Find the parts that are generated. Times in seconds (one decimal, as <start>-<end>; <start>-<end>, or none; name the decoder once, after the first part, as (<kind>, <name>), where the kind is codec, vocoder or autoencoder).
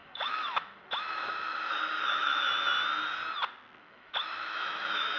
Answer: 0.0-2.5 (autoencoder, DAC-VAE); 3.8-5.2